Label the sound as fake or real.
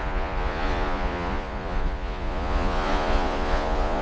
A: fake